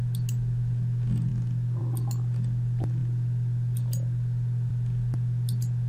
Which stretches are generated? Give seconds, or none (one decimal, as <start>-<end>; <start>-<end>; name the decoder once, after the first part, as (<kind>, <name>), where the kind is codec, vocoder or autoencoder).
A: none